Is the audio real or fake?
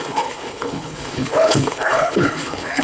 fake